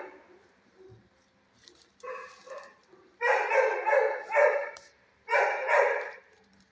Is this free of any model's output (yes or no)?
no